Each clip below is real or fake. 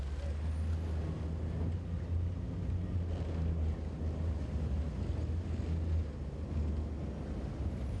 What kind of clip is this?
real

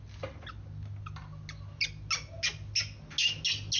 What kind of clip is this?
real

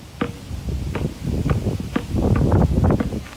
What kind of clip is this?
real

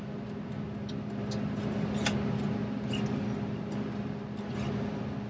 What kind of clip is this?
real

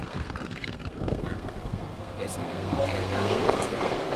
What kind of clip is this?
fake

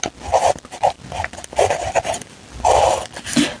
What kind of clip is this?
real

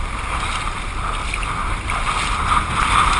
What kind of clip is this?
real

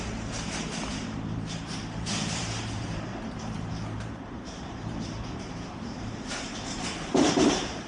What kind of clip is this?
fake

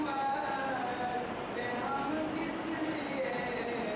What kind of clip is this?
real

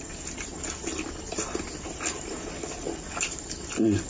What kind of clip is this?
real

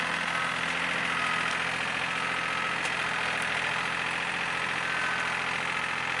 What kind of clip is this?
real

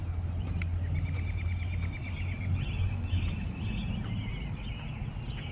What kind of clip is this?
real